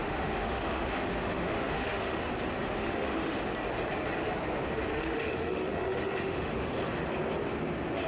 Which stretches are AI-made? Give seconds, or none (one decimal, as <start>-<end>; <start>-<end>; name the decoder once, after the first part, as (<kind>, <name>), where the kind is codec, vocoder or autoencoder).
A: 0.0-2.2 (autoencoder, DAC-VAE); 2.8-3.4; 4.9-6.5